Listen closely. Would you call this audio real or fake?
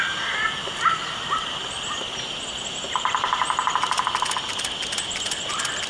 real